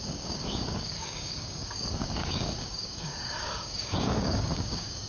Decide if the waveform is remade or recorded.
remade